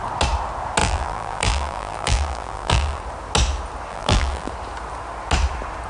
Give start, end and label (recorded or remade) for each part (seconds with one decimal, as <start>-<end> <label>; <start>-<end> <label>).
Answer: 0.0-0.8 recorded; 0.8-3.0 remade; 3.0-3.9 recorded; 3.9-4.5 remade; 4.5-5.9 recorded